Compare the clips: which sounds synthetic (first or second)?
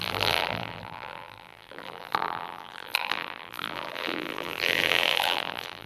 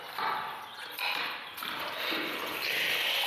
first